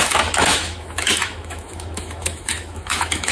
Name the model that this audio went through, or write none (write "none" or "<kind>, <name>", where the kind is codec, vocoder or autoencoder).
autoencoder, DAC-VAE